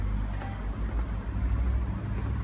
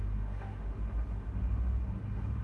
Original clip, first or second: first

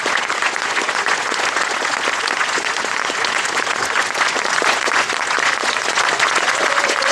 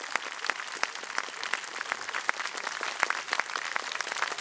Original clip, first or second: second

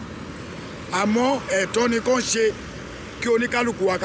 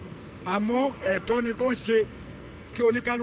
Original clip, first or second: first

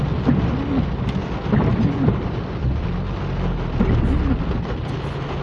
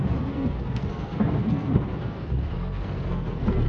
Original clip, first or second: first